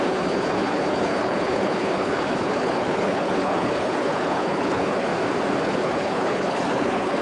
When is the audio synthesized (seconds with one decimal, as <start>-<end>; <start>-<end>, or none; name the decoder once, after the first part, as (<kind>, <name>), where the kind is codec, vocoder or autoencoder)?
0.0-5.1 (codec, HILCodec); 5.6-7.2